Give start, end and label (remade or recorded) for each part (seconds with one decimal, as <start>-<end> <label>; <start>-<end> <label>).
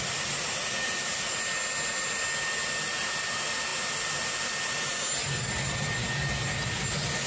0.0-7.3 recorded